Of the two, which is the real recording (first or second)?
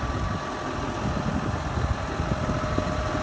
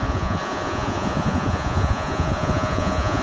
first